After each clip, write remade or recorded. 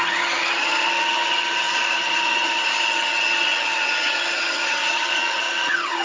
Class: remade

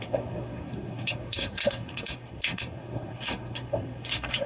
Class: remade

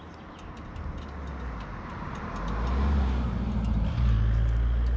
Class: recorded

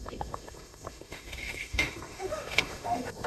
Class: remade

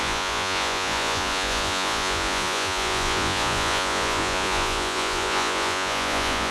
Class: remade